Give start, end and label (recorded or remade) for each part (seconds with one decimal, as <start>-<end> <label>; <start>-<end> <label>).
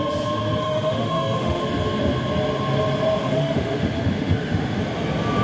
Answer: 0.0-0.6 recorded; 0.6-1.6 remade; 1.6-3.2 recorded; 3.2-4.8 remade; 4.8-5.4 recorded